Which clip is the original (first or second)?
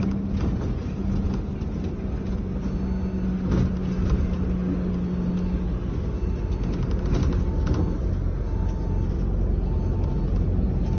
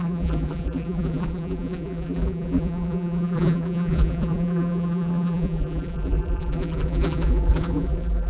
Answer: first